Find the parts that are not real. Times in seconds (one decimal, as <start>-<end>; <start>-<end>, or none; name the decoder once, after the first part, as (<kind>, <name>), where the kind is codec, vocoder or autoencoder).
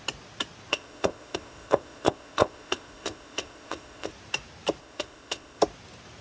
0.7-4.1 (codec, ZipCodec); 4.8-5.6